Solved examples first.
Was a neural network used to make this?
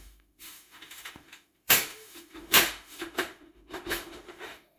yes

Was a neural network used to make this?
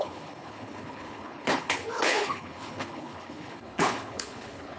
yes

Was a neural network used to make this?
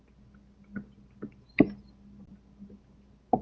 no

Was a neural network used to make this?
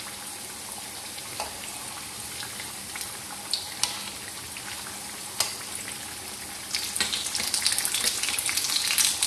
no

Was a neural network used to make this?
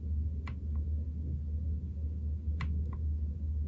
no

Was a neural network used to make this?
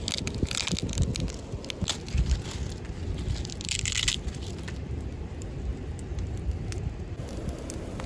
no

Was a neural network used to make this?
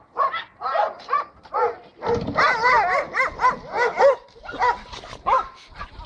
no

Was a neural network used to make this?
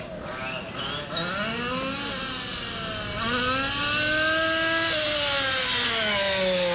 no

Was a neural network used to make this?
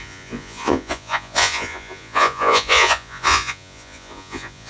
yes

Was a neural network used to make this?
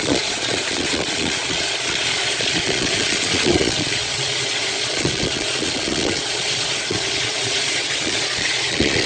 yes